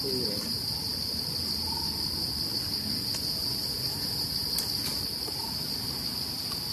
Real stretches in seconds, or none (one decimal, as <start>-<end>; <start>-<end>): 0.0-6.7